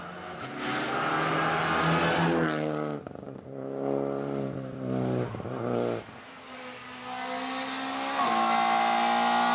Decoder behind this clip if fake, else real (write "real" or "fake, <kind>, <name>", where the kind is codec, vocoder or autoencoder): real